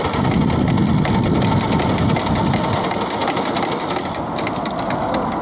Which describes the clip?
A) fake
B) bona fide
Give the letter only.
B